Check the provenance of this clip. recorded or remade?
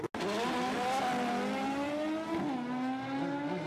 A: recorded